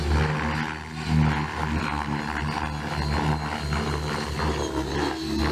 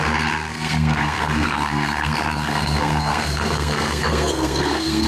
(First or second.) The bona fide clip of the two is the first